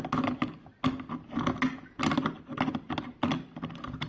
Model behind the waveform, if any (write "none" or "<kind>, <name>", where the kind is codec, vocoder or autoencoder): none